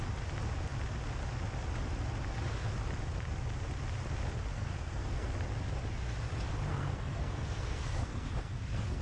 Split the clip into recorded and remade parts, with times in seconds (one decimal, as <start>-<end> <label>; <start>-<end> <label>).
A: 0.0-4.5 recorded; 4.5-5.3 remade; 5.3-6.7 recorded; 6.7-9.0 remade